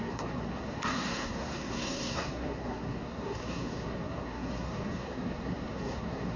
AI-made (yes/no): yes